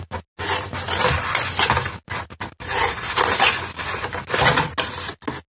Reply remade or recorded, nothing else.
recorded